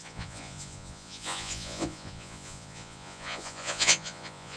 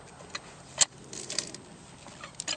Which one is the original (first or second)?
second